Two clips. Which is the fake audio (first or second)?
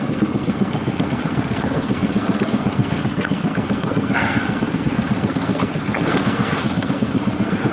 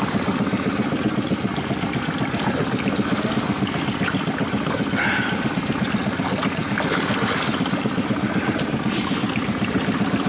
first